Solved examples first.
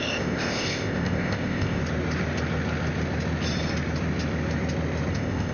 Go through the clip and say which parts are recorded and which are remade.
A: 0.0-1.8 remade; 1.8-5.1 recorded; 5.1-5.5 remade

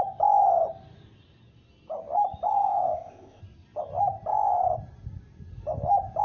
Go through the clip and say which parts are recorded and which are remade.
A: 0.0-2.5 recorded; 2.5-3.4 remade; 3.4-6.2 recorded

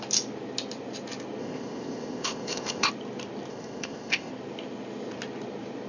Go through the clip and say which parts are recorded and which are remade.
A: 0.0-1.4 recorded; 1.4-2.9 remade; 2.9-3.5 recorded; 3.5-4.3 remade; 4.3-5.9 recorded

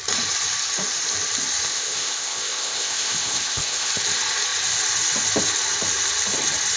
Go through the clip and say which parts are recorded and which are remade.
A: 0.0-1.7 recorded; 1.7-3.9 remade; 3.9-6.8 recorded